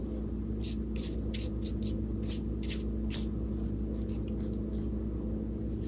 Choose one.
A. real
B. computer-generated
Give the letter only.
A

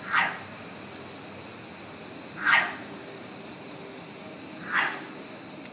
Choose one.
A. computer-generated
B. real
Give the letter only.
B